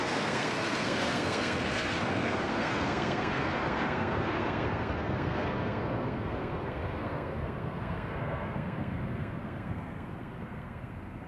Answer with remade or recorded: remade